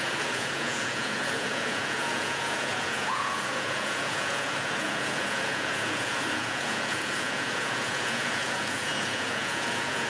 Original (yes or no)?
no